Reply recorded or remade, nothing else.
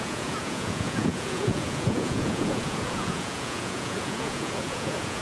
remade